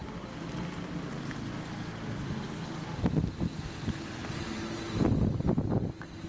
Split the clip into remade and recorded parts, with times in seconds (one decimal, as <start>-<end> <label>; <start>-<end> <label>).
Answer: 0.0-6.3 recorded